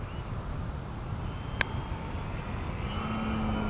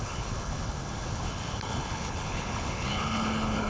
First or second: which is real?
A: first